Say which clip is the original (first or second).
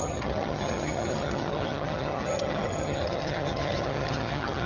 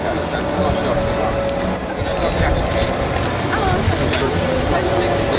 second